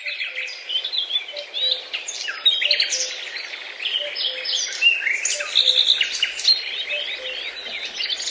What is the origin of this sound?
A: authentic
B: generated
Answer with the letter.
A